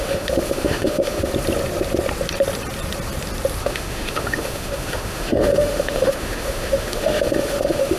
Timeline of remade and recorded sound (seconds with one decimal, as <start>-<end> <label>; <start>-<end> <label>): 0.0-1.3 remade; 1.3-3.6 recorded; 3.6-8.0 remade